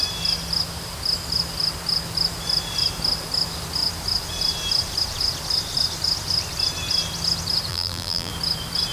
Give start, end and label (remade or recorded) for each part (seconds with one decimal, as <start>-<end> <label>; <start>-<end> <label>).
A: 0.0-7.7 recorded; 7.7-8.3 remade; 8.3-8.9 recorded